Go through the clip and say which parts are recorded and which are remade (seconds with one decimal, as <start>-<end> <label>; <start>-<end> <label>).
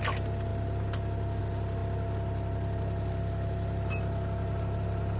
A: 0.0-5.2 recorded